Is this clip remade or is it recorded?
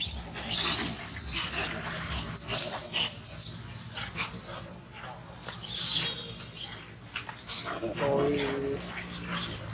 recorded